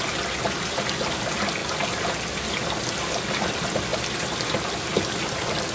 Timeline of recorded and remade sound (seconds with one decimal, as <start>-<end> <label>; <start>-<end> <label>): 0.0-5.7 recorded